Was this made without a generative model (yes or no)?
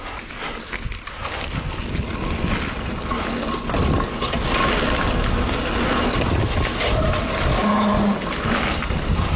yes